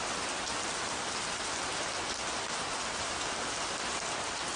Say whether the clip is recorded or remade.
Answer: recorded